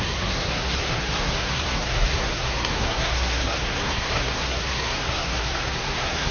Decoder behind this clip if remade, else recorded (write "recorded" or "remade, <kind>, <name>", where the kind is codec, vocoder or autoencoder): remade, codec, SNAC